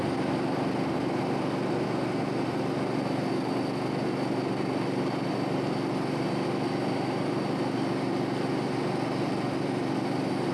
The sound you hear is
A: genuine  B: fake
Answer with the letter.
A